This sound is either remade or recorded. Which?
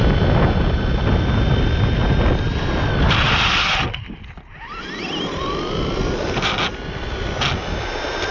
recorded